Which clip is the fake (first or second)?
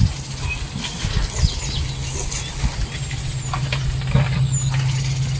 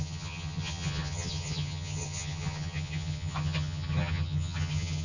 second